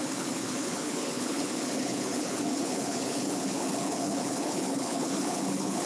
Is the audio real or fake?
fake